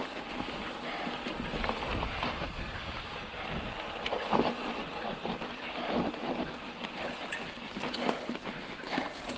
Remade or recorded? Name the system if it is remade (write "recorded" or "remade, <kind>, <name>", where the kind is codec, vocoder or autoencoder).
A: recorded